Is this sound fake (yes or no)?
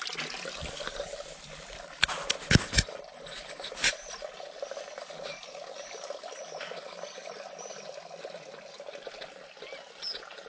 no